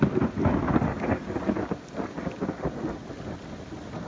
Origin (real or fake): real